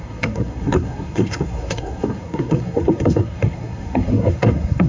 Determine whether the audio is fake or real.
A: fake